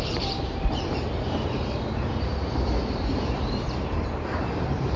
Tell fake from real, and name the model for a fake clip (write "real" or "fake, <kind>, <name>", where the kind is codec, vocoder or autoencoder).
fake, vocoder, BigVGAN v2